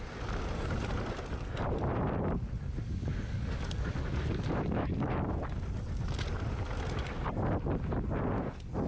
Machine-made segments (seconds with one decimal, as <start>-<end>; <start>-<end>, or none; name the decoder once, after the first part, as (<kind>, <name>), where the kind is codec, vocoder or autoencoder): 2.6-5.1 (codec, DAC)